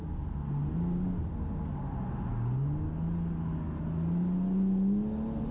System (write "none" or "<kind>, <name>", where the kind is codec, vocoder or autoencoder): none